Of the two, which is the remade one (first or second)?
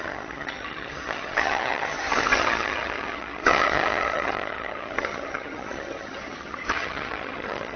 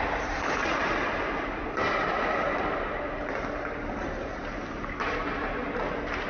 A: first